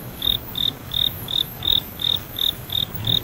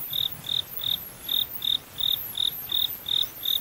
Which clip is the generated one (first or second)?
first